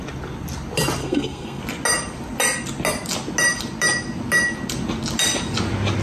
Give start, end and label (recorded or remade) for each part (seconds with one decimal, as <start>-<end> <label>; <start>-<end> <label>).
0.0-1.0 recorded; 1.0-1.6 remade; 1.6-6.0 recorded